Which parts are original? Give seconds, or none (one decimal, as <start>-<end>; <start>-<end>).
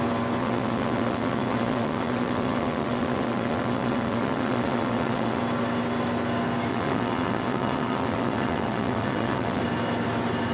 0.0-0.4; 5.4-6.7; 9.6-10.5